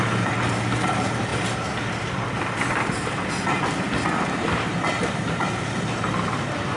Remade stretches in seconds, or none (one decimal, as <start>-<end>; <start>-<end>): 0.0-1.3; 5.1-6.8